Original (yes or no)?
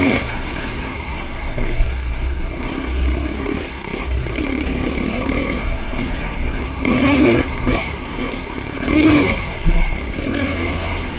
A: no